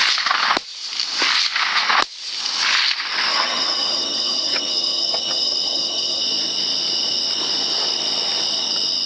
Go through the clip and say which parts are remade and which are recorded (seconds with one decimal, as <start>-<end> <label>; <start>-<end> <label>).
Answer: 0.0-3.3 recorded; 3.3-6.2 remade; 6.2-9.1 recorded